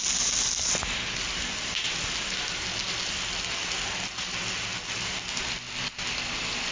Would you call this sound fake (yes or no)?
no